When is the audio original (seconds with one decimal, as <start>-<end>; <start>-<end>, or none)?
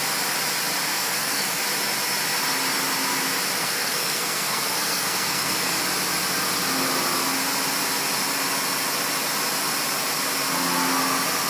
0.0-0.9; 1.6-3.6; 5.8-11.5